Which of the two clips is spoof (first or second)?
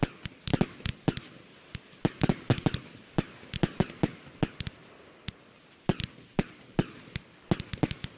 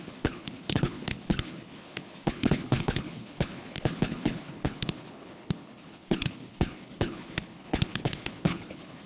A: second